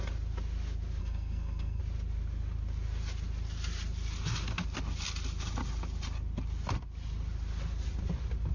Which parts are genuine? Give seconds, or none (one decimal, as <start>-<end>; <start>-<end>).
0.0-1.0; 1.8-8.5